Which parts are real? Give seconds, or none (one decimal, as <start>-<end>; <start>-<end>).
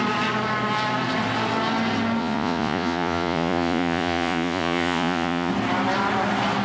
0.0-2.2; 5.5-6.6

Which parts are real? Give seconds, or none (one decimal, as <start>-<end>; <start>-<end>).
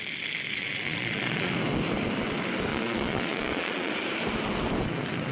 0.0-0.6; 1.5-2.7; 3.9-5.3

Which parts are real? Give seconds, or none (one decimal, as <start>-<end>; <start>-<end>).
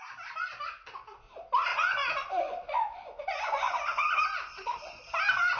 0.0-1.7; 5.0-5.6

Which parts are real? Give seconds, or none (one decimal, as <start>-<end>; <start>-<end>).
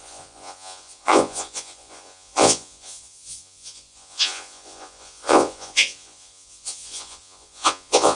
none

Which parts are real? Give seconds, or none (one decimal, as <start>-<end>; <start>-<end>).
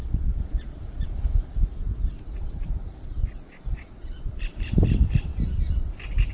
1.2-3.2; 4.4-6.3